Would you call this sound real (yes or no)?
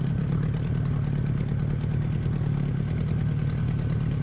yes